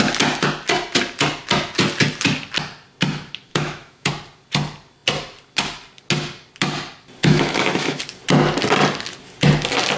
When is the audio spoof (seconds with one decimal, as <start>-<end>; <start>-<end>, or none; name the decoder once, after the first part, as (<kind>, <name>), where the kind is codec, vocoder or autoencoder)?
3.5-4.1 (autoencoder, DAC-VAE); 7.2-8.0